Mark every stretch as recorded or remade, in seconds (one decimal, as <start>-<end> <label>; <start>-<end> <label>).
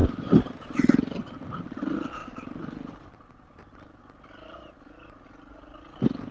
0.0-1.3 remade; 1.3-2.2 recorded; 2.2-4.0 remade; 4.0-6.3 recorded